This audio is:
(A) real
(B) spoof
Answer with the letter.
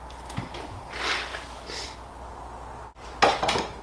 A